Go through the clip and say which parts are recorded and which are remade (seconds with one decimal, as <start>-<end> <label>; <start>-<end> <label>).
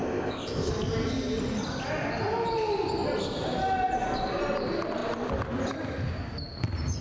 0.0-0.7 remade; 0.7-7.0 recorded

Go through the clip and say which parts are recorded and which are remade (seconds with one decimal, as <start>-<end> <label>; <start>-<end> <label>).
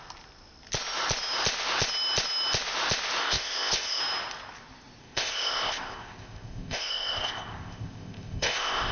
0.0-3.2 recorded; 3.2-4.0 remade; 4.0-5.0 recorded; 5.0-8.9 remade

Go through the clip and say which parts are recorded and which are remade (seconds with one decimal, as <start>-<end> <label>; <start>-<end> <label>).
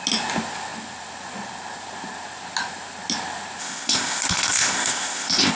0.0-3.6 recorded; 3.6-5.5 remade